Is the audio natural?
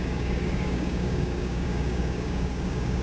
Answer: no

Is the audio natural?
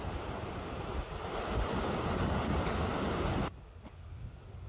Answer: yes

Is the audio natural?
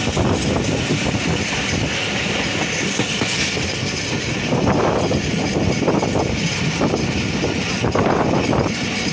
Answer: yes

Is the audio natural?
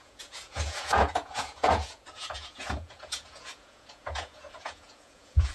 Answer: no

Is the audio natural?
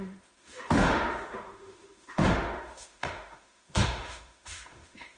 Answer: no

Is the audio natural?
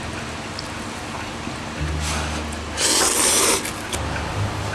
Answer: yes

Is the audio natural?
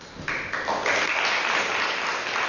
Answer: yes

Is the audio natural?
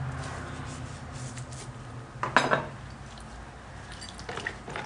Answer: yes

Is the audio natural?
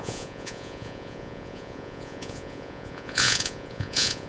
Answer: no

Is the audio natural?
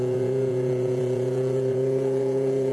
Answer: no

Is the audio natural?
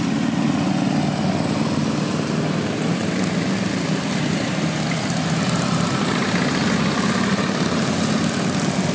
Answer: yes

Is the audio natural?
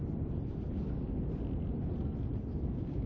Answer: yes